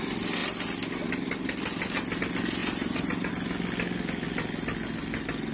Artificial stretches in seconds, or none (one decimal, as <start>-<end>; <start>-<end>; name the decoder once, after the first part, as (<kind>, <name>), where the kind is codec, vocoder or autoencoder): 2.6-3.3 (vocoder, BigVGAN v2)